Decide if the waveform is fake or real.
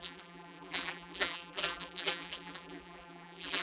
fake